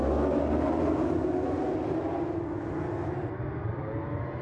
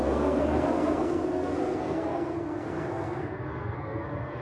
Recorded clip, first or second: first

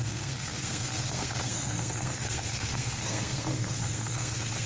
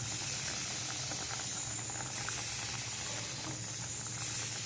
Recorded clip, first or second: second